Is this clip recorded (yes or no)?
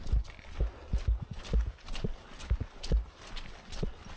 yes